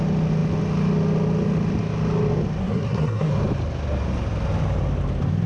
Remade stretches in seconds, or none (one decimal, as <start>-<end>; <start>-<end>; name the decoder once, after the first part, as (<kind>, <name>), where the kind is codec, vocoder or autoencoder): 2.6-3.3 (codec, SNAC)